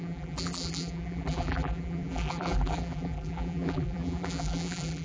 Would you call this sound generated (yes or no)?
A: yes